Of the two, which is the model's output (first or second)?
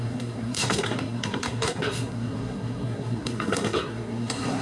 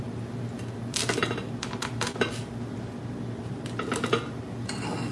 first